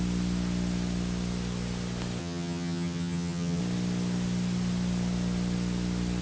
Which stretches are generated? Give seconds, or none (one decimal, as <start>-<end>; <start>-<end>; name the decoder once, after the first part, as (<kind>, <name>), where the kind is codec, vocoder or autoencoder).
2.2-3.6 (vocoder, HiFi-GAN)